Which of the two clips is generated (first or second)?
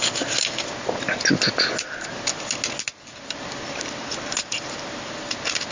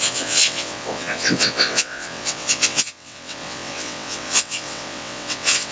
second